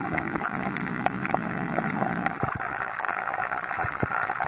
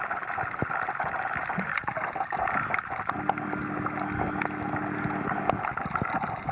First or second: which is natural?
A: second